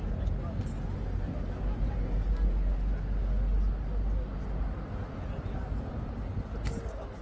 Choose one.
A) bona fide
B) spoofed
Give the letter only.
A